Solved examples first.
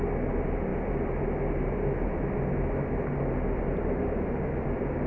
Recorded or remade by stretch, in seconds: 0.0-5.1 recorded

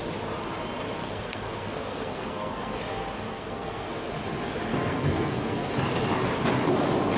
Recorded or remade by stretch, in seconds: 0.0-1.0 recorded; 1.0-2.8 remade; 2.8-3.3 recorded; 3.3-4.1 remade; 4.1-4.7 recorded; 4.7-5.7 remade; 5.7-7.2 recorded

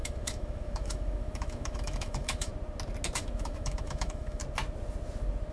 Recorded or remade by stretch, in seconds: 0.0-2.5 remade; 2.5-3.2 recorded; 3.2-4.4 remade; 4.4-5.5 recorded

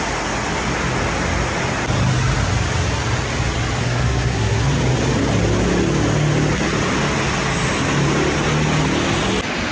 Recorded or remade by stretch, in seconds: 0.0-3.8 recorded; 3.8-4.6 remade; 4.6-9.7 recorded

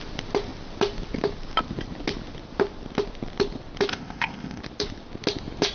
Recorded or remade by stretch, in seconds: 0.0-3.9 recorded; 3.9-4.6 remade; 4.6-5.7 recorded